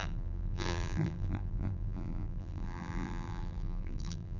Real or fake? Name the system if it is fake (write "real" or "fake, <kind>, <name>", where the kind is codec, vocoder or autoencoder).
fake, vocoder, BigVGAN v2